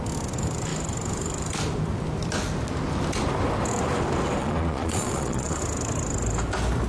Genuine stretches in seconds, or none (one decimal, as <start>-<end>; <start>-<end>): 0.0-4.4; 5.6-6.9